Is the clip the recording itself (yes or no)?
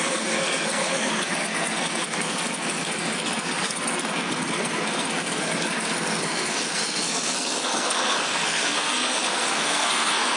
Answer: no